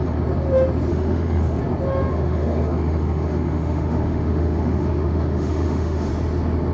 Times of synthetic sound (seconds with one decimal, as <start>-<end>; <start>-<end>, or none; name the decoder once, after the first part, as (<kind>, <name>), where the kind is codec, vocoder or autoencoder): 0.9-1.6 (autoencoder, DAC-VAE); 2.1-6.1